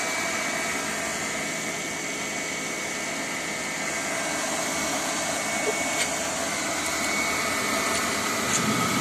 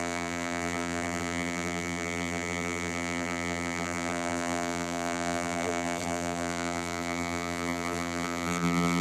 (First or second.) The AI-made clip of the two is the second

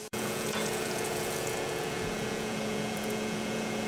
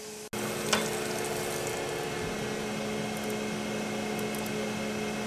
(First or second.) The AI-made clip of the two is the first